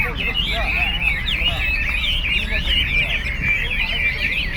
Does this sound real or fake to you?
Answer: real